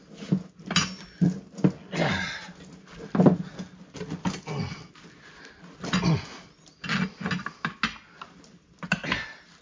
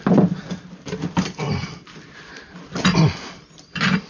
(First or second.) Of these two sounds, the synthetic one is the second